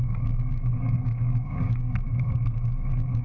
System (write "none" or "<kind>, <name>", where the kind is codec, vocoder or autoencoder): codec, DAC